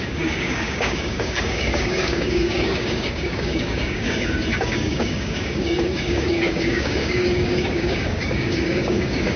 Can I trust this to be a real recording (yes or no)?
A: no